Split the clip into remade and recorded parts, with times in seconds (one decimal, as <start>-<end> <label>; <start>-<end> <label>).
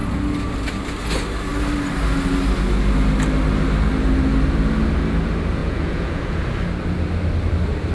0.0-5.6 recorded; 5.6-6.4 remade; 6.4-7.9 recorded